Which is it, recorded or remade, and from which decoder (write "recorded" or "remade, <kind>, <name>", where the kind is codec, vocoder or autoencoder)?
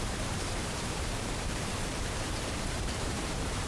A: remade, vocoder, BigVGAN v2